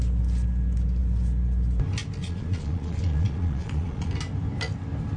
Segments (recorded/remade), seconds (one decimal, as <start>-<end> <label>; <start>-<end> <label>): 0.0-2.2 recorded; 2.2-4.1 remade; 4.1-5.2 recorded